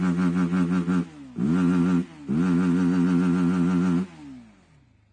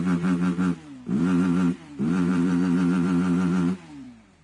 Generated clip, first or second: second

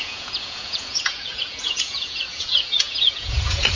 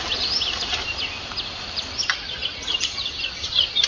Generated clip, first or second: first